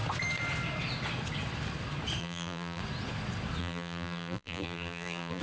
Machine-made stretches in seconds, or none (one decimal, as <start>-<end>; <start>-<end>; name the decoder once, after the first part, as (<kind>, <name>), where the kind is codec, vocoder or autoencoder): 2.2-2.8 (vocoder, BigVGAN v2); 3.6-5.4